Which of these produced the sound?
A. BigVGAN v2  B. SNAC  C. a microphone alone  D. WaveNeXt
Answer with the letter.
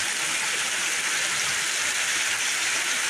C